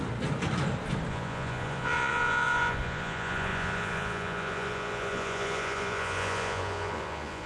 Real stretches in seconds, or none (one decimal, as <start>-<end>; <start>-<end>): 0.0-1.1